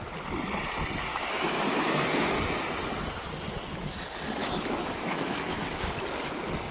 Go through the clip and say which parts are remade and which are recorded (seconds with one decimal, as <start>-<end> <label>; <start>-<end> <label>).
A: 0.0-1.1 recorded; 1.1-2.1 remade; 2.1-4.4 recorded; 4.4-5.8 remade; 5.8-6.7 recorded